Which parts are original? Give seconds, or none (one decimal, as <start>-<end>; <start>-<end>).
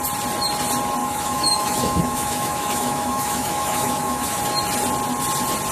0.0-1.0; 4.4-5.7